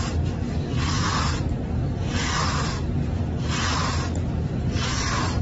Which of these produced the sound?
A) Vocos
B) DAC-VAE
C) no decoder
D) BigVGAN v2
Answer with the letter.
C